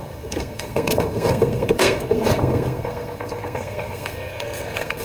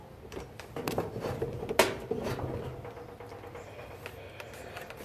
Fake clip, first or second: first